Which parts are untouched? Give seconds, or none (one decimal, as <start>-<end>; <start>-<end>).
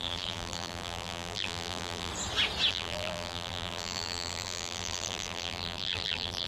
2.1-2.7